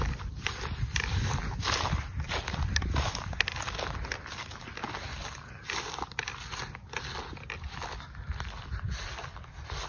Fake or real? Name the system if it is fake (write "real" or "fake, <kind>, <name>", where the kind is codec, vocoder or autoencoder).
real